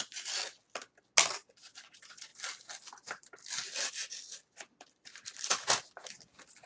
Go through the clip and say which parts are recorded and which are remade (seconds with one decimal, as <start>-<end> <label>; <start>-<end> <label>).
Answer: 0.0-1.3 recorded; 1.3-2.3 remade; 2.3-2.9 recorded; 2.9-6.7 remade